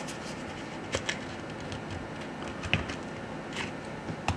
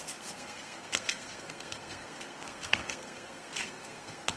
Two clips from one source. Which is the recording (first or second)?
first